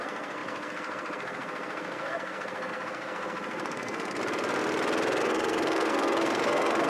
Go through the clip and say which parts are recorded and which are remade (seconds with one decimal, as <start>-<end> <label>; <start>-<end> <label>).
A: 0.0-4.2 remade; 4.2-5.2 recorded; 5.2-6.9 remade

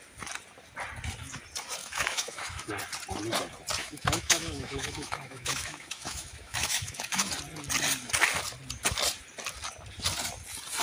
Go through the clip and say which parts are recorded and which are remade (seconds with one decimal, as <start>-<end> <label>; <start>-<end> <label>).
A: 0.0-1.8 recorded; 1.8-2.7 remade; 2.7-3.8 recorded; 3.8-7.3 remade; 7.3-10.8 recorded

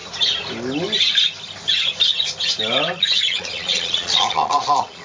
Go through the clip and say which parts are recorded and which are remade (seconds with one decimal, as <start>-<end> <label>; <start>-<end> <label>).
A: 0.0-3.0 recorded; 3.0-5.0 remade

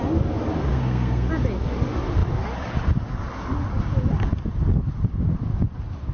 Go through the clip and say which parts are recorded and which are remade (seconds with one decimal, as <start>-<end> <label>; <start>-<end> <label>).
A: 0.0-0.7 recorded; 0.7-1.3 remade; 1.3-6.1 recorded

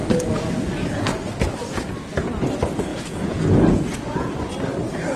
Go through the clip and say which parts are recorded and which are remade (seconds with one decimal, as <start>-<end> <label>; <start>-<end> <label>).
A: 0.0-2.9 recorded; 2.9-4.4 remade; 4.4-5.2 recorded

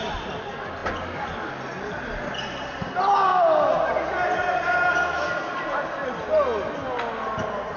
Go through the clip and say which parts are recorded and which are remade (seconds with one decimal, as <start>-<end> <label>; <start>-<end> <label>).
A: 0.0-7.8 recorded

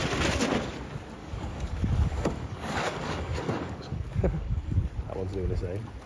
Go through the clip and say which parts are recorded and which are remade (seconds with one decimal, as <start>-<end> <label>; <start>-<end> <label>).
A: 0.0-1.2 recorded; 1.2-4.9 remade; 4.9-6.1 recorded

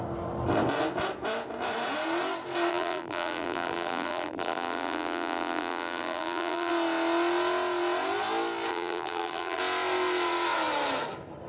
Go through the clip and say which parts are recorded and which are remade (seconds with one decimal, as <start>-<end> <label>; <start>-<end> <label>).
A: 0.0-2.7 recorded; 2.7-6.7 remade; 6.7-8.7 recorded; 8.7-9.6 remade; 9.6-11.5 recorded